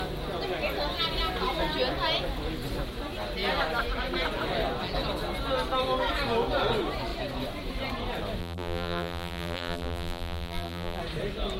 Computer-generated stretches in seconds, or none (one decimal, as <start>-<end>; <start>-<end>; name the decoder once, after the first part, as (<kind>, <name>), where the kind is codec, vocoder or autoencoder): 8.4-11.0 (vocoder, BigVGAN v2)